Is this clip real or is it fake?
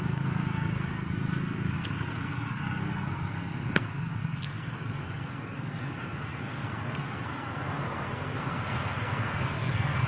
fake